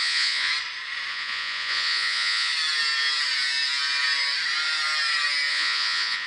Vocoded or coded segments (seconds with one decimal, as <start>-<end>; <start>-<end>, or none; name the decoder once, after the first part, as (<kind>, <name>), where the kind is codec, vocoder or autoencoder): 0.0-0.5 (vocoder, Vocos); 1.1-2.5; 5.5-6.3